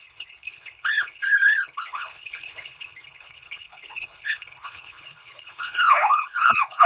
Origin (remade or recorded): remade